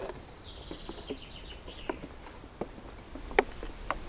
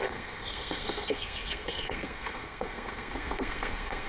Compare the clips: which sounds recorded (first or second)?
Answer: first